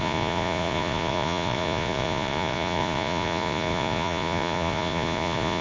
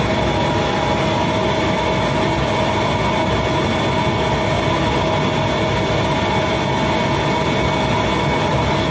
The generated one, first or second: first